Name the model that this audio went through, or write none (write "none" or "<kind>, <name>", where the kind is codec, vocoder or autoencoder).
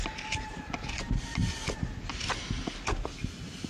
none